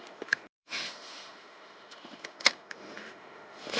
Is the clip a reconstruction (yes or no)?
yes